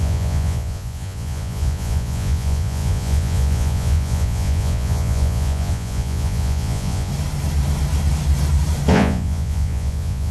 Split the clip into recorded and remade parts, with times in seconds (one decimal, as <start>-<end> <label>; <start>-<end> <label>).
0.0-7.1 remade; 7.1-8.9 recorded; 8.9-10.3 remade

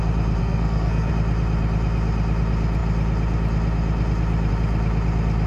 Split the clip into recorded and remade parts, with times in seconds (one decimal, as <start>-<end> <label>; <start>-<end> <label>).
0.0-0.4 recorded; 0.4-1.1 remade; 1.1-5.5 recorded